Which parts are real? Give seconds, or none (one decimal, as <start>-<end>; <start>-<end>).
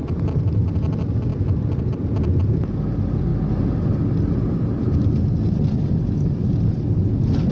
0.7-7.5